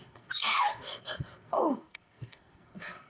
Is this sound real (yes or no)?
no